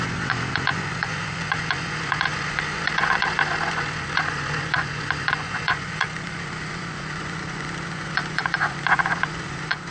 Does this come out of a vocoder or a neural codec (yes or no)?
yes